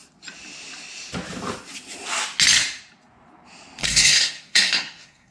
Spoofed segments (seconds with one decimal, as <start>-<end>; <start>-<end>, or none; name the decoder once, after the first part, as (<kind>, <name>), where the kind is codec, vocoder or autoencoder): 3.8-5.3 (codec, SNAC)